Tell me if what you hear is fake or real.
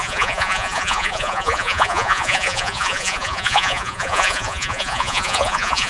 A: fake